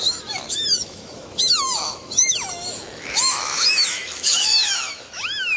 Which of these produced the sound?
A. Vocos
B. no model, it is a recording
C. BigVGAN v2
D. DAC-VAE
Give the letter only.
D